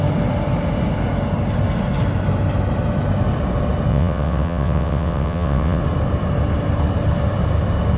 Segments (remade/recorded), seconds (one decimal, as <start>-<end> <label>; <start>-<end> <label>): 0.0-3.9 recorded; 3.9-5.8 remade; 5.8-8.0 recorded